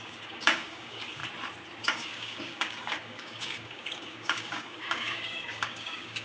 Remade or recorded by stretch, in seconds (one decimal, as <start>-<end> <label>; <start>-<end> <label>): 0.0-1.2 remade; 1.2-1.8 recorded; 1.8-6.2 remade